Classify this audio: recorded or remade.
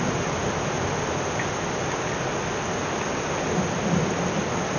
recorded